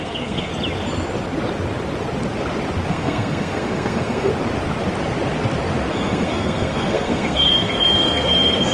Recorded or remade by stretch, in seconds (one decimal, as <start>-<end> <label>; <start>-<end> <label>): 0.0-0.5 remade; 0.5-2.9 recorded; 2.9-4.3 remade; 4.3-5.9 recorded; 5.9-8.7 remade